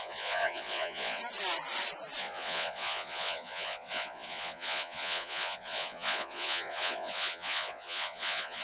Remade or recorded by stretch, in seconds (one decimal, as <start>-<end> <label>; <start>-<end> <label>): 0.0-1.2 remade; 1.2-2.2 recorded; 2.2-8.6 remade